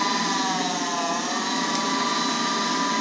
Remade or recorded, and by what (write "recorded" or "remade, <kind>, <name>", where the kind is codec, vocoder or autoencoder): recorded